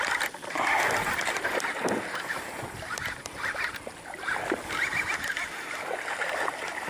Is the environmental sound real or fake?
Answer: real